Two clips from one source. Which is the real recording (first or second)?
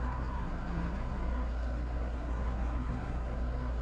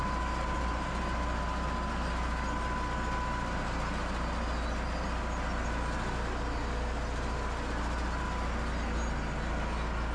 second